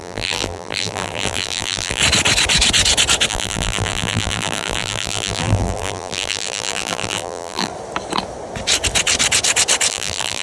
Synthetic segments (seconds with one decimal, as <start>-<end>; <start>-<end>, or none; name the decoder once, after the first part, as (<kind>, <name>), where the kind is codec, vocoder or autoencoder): 0.0-2.0 (vocoder, BigVGAN v2); 3.3-7.7; 9.9-10.4